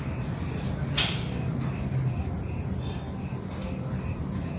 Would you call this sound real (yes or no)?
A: yes